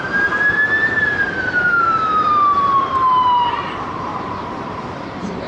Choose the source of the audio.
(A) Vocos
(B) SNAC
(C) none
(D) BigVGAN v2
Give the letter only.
D